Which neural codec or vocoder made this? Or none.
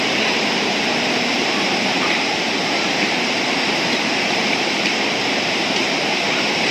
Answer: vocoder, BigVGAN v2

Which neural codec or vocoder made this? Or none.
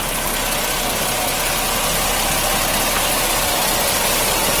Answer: none